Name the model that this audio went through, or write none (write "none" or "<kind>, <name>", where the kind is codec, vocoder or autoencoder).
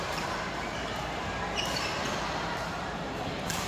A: vocoder, BigVGAN v2